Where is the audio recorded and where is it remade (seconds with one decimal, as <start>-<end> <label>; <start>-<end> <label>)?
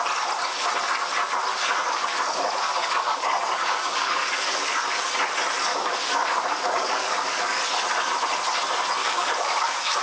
0.0-1.5 recorded; 1.5-5.0 remade; 5.0-5.7 recorded; 5.7-7.6 remade; 7.6-9.0 recorded; 9.0-10.0 remade